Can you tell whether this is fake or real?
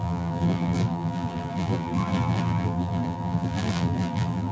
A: fake